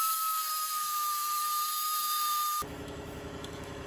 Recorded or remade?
remade